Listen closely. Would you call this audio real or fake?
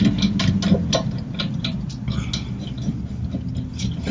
real